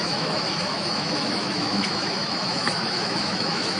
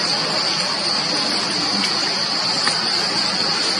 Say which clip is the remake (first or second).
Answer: first